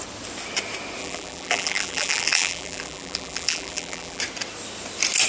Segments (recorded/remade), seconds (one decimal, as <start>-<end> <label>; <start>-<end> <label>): 0.0-1.0 recorded; 1.0-4.2 remade; 4.2-5.3 recorded